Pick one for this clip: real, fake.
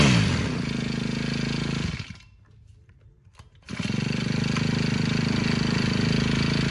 real